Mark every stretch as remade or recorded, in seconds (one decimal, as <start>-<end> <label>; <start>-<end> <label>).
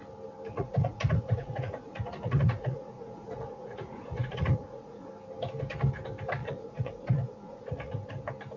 0.0-0.5 recorded; 0.5-5.1 remade; 5.1-6.4 recorded; 6.4-8.1 remade; 8.1-8.6 recorded